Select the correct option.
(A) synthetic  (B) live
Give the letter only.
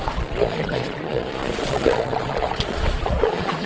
A